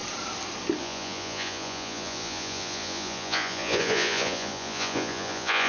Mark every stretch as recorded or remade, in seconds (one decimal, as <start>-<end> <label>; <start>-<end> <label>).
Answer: 0.0-0.8 recorded; 0.8-5.7 remade